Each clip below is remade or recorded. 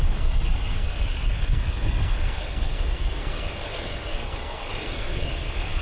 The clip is remade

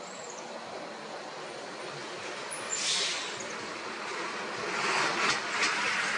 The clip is recorded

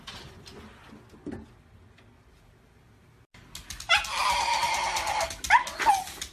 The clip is recorded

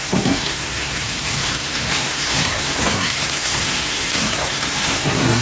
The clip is remade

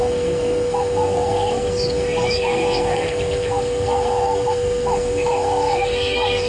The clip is remade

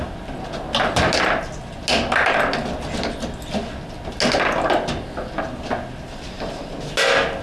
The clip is recorded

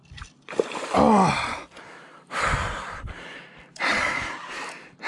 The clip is recorded